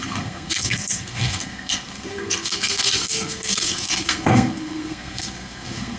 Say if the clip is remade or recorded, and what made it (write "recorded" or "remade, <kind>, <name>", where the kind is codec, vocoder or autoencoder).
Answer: remade, codec, SNAC